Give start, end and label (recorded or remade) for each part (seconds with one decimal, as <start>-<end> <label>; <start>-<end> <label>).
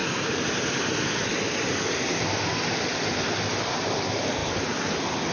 0.0-3.2 recorded; 3.2-4.4 remade; 4.4-5.3 recorded